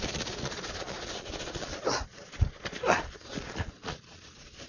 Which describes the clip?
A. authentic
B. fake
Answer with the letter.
B